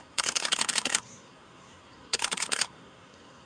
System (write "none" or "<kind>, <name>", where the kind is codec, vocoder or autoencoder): codec, SNAC